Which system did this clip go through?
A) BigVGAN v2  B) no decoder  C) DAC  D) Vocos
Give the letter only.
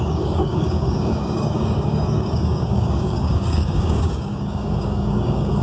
C